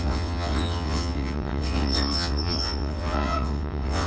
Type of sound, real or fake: fake